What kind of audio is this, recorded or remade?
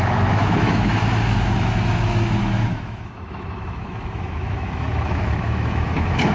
remade